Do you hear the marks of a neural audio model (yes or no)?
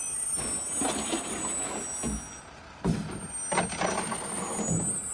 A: no